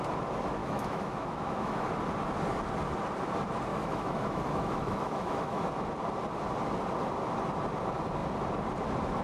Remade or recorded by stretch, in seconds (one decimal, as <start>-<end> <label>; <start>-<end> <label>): 0.0-0.6 recorded; 0.6-1.9 remade; 1.9-3.7 recorded; 3.7-5.7 remade; 5.7-9.2 recorded